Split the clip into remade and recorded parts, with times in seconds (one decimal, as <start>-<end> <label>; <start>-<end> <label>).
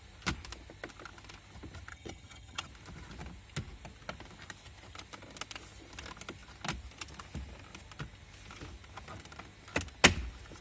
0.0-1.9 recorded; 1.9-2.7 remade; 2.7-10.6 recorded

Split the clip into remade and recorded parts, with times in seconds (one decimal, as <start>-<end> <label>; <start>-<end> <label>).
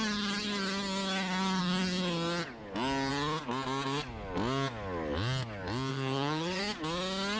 0.0-5.9 recorded; 5.9-6.6 remade; 6.6-7.4 recorded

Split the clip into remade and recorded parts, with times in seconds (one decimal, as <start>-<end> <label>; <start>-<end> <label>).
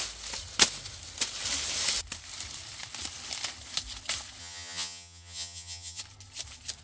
0.0-4.4 recorded; 4.4-6.0 remade; 6.0-6.8 recorded